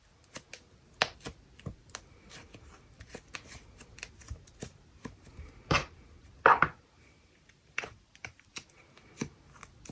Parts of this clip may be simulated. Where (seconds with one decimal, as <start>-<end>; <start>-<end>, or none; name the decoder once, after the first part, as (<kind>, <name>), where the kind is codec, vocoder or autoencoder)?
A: 4.2-8.5 (vocoder, BigVGAN v2)